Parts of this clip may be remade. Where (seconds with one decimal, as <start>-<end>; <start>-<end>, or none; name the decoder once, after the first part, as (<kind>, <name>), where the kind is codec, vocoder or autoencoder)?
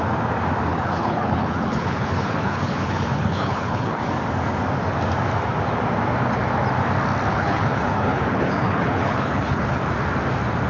0.7-4.0 (codec, HILCodec); 7.3-9.8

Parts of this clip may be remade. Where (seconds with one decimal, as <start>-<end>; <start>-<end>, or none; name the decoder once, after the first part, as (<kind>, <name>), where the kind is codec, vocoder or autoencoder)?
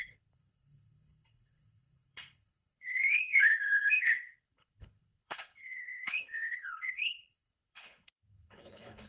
0.0-9.1 (codec, HILCodec)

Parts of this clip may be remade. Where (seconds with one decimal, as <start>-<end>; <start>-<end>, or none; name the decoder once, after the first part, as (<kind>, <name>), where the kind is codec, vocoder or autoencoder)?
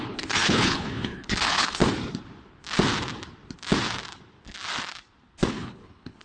0.0-1.8 (codec, HILCodec); 5.5-6.2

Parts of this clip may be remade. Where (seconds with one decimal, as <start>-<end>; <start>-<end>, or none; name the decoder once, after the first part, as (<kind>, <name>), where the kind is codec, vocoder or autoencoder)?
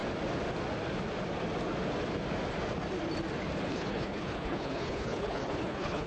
3.7-6.1 (codec, HILCodec)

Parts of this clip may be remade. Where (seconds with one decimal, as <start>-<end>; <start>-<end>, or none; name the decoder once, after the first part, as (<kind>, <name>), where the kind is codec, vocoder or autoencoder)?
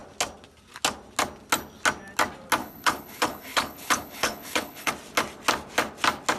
2.6-4.9 (codec, HILCodec)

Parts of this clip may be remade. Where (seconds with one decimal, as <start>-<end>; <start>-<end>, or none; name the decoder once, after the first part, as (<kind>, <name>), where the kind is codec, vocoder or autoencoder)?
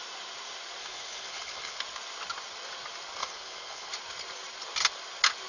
0.8-1.8 (codec, HILCodec); 3.2-3.9